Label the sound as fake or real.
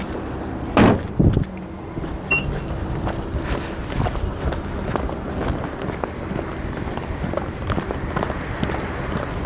real